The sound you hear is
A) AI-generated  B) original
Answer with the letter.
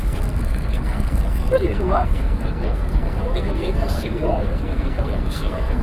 A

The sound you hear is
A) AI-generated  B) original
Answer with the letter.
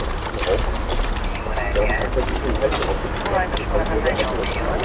B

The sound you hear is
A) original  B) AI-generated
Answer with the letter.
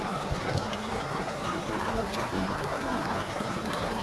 B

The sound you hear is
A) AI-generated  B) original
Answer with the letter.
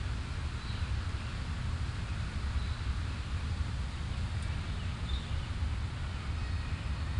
B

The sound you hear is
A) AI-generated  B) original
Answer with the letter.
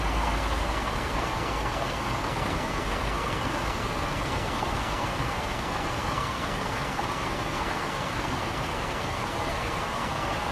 A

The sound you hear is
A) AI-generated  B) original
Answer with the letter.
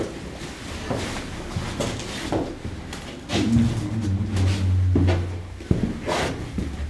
B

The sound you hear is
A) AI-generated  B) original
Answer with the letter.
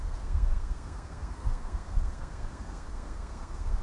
A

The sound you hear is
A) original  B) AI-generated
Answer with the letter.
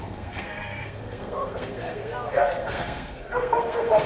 B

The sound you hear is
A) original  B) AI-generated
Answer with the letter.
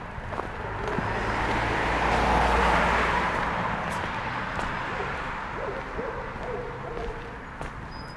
A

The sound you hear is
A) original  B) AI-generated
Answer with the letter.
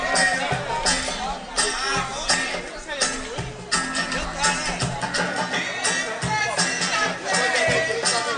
A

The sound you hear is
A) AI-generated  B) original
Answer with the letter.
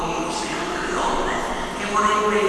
B